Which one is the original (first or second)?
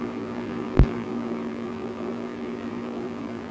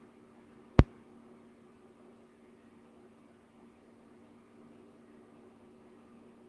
second